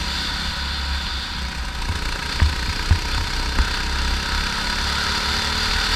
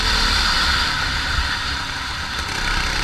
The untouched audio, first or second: first